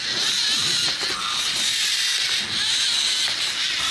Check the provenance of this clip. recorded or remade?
recorded